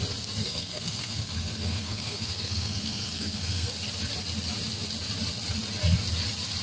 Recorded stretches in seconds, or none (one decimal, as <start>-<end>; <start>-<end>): 0.0-0.4; 3.7-6.6